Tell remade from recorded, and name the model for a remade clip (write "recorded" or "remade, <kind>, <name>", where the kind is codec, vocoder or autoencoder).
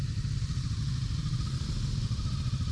recorded